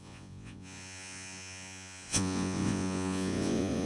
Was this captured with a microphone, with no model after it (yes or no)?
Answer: no